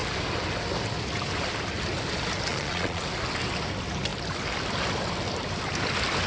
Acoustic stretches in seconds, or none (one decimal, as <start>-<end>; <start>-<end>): 0.0-2.5; 3.0-6.3